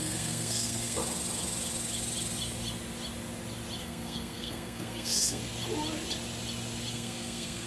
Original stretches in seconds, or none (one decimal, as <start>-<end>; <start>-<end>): 1.0-3.8; 5.4-6.9

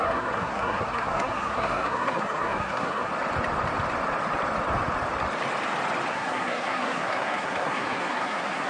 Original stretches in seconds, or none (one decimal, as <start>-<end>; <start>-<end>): 3.1-6.1

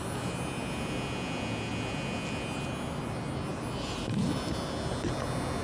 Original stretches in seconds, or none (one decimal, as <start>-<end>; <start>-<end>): 0.0-5.6

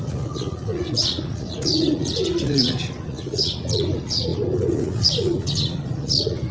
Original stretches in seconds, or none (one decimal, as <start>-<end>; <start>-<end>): none

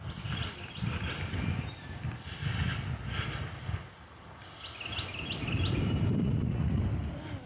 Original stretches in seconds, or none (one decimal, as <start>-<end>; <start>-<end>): 0.0-6.2; 6.8-7.5

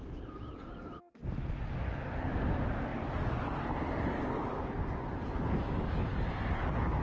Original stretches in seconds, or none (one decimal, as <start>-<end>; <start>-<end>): 0.0-7.0

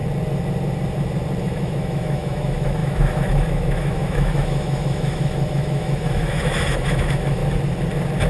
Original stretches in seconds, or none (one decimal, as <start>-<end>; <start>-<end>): 0.0-1.4; 7.4-8.3